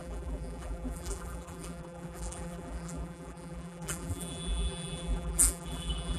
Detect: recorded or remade remade